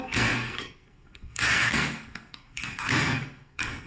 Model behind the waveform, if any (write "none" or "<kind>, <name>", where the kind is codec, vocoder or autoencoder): codec, SNAC